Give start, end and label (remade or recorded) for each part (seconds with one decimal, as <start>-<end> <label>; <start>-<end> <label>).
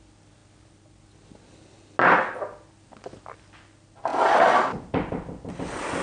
0.0-6.0 recorded